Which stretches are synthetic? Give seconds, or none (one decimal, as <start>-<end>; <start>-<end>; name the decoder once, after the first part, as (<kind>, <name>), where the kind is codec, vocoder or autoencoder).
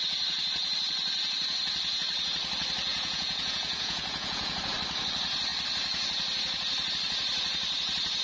2.9-4.6 (vocoder, Vocos)